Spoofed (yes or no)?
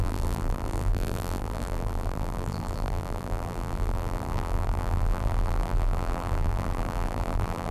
yes